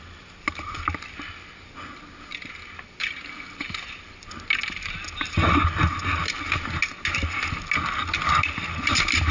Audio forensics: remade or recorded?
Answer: recorded